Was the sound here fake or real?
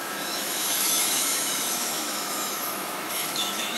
fake